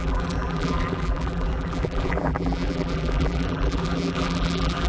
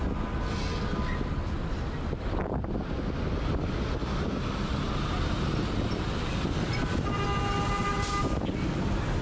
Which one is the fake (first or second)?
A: first